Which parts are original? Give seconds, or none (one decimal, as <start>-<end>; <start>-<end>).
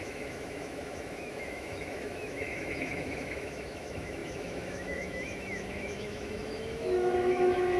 none